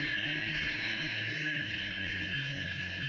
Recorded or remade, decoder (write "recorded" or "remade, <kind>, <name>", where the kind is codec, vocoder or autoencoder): remade, codec, SNAC